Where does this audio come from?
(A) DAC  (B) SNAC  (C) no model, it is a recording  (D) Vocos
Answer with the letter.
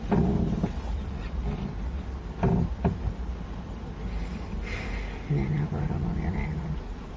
C